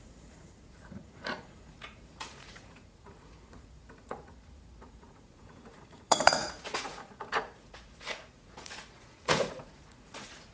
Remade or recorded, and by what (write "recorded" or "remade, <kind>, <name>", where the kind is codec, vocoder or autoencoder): remade, vocoder, Vocos